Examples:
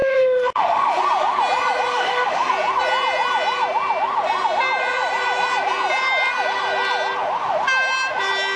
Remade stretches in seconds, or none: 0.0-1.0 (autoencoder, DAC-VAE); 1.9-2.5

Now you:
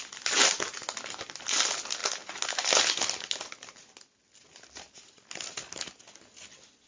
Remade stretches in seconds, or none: none

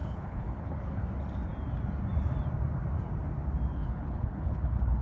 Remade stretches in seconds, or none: 0.0-1.0 (codec, HILCodec); 3.7-5.0